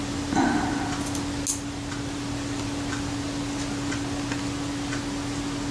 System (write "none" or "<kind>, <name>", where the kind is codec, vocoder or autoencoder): none